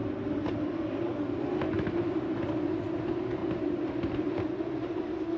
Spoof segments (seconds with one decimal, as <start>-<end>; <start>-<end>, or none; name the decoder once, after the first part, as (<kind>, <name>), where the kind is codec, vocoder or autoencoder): 0.0-3.0 (vocoder, BigVGAN v2)